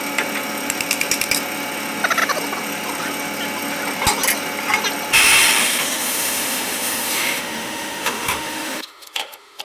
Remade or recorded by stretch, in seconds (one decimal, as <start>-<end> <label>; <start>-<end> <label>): 0.0-5.6 recorded; 5.6-9.6 remade